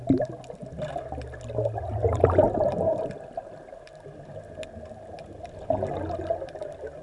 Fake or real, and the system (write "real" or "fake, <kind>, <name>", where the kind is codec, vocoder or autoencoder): real